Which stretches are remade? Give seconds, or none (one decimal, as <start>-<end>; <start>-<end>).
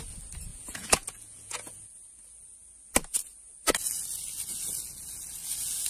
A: 0.5-1.8